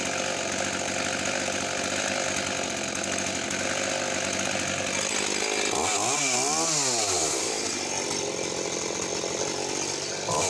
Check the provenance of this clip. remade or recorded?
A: recorded